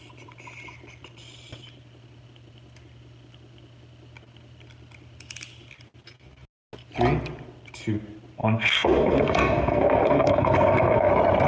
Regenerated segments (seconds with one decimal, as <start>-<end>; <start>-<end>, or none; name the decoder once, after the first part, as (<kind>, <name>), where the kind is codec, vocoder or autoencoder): 8.4-11.1 (codec, SNAC)